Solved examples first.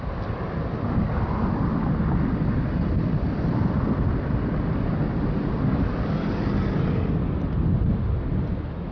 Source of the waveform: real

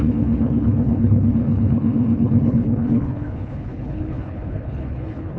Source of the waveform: fake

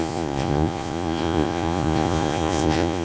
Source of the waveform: fake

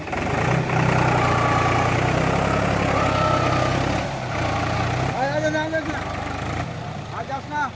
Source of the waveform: real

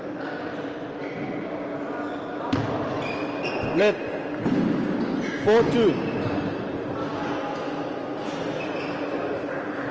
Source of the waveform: real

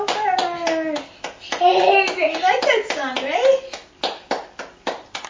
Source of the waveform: real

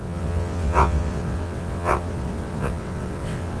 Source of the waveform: fake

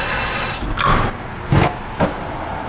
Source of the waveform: real